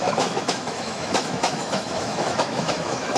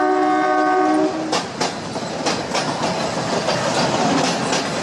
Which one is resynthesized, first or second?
first